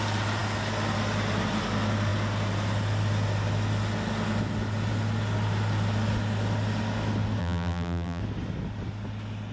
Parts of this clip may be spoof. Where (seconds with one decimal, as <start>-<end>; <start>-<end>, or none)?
7.4-8.2